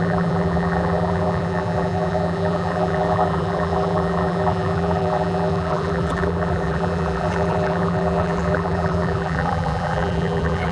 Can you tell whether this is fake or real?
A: fake